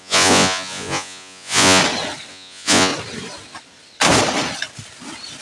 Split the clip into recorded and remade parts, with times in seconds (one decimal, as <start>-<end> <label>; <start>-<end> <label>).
0.0-1.8 remade; 1.8-2.3 recorded; 2.3-2.9 remade; 2.9-5.4 recorded